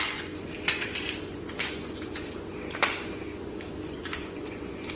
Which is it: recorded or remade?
remade